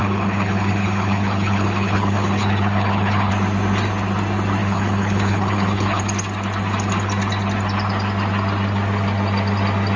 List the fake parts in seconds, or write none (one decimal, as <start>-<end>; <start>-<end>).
0.0-3.3; 4.6-6.0